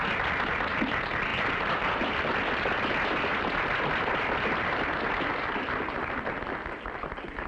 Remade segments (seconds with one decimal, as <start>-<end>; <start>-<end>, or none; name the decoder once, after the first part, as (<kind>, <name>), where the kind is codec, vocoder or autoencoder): none